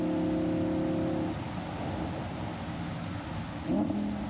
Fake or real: real